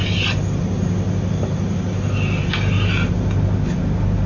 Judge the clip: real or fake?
real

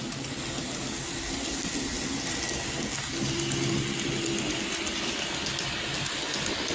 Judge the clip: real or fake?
real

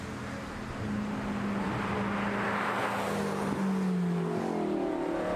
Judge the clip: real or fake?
real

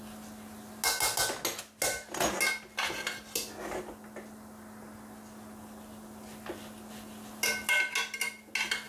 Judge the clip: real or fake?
real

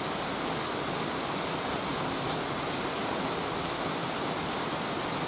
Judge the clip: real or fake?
real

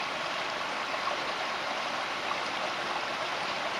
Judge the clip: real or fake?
fake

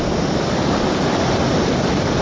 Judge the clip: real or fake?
real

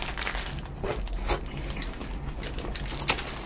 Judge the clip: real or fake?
real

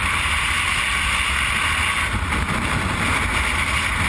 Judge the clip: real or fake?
real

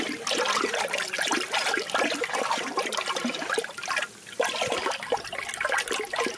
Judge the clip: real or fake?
fake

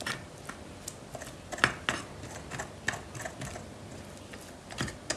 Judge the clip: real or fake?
real